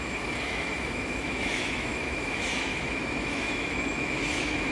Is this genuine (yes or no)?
no